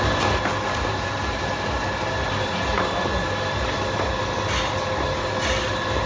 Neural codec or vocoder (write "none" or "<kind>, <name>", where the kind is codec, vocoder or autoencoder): none